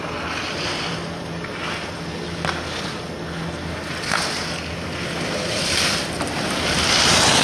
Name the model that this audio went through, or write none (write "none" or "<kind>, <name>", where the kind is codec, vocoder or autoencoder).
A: none